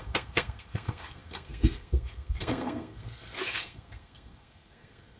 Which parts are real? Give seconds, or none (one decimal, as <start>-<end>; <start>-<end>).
none